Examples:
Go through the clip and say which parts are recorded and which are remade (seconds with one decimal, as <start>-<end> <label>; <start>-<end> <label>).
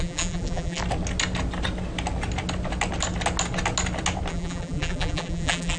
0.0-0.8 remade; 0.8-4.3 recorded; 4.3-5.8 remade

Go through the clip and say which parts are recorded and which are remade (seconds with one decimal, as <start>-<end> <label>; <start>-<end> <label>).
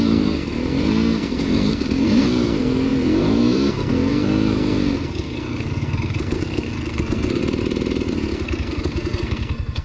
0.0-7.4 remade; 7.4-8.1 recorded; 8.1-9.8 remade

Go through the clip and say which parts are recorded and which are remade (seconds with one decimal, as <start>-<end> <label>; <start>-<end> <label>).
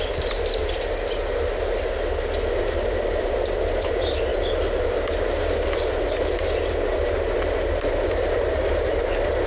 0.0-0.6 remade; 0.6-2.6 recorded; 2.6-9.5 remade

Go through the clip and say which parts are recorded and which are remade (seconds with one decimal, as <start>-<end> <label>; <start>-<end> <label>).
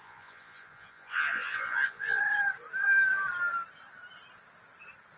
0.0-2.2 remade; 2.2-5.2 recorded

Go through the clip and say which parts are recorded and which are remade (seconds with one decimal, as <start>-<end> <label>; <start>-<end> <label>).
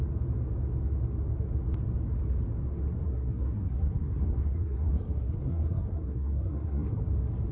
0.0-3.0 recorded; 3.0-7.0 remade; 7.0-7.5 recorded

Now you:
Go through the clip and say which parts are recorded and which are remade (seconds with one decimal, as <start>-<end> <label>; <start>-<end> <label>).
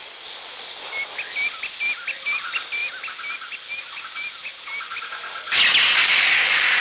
0.0-6.8 recorded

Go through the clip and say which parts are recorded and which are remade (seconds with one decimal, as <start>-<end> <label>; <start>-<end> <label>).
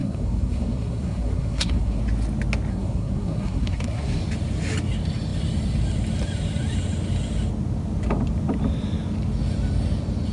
0.0-2.0 remade; 2.0-2.7 recorded; 2.7-4.2 remade; 4.2-10.3 recorded